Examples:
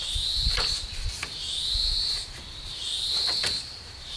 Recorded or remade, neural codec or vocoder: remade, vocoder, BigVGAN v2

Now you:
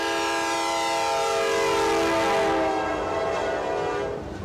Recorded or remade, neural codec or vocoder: recorded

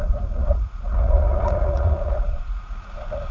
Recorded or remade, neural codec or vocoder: remade, vocoder, Vocos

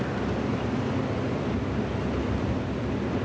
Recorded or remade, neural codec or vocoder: recorded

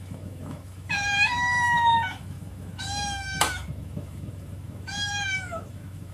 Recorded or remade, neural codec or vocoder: remade, autoencoder, DAC-VAE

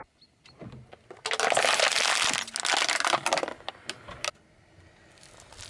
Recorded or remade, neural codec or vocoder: recorded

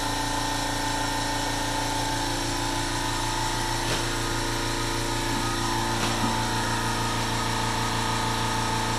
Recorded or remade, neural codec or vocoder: recorded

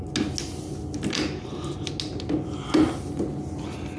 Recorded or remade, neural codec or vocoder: recorded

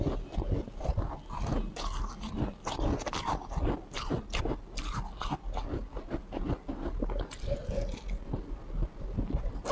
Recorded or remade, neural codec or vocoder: recorded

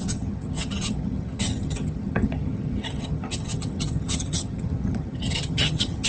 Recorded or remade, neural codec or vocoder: remade, vocoder, HiFi-GAN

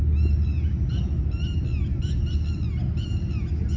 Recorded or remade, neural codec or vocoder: recorded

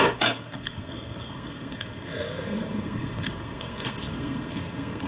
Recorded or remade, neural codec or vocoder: remade, codec, SNAC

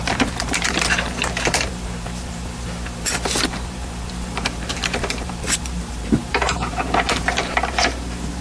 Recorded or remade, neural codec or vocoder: remade, vocoder, BigVGAN v2